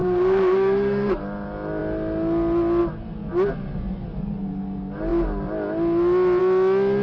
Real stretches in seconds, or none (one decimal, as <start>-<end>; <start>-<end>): 1.2-7.0